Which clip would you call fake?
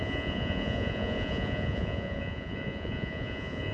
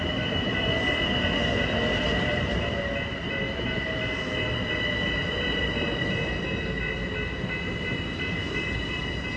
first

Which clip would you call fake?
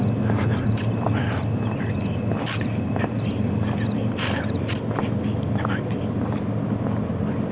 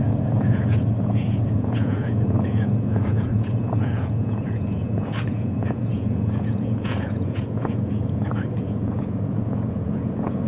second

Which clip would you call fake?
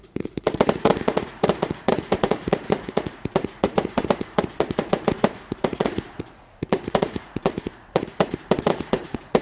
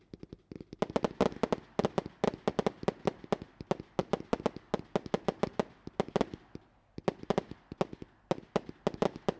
first